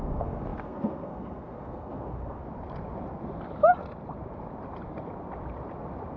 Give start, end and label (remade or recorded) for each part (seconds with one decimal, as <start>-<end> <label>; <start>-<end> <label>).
0.0-2.4 remade; 2.4-6.2 recorded